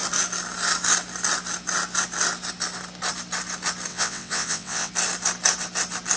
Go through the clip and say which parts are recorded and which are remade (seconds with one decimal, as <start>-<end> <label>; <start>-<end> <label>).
0.0-3.9 recorded; 3.9-4.9 remade; 4.9-6.2 recorded